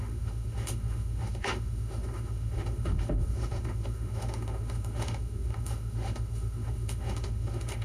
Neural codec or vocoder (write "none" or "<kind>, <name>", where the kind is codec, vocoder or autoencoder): autoencoder, DAC-VAE